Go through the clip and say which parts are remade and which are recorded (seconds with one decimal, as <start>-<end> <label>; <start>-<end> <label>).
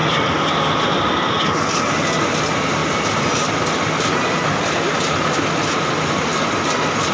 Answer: 0.0-1.2 remade; 1.2-7.1 recorded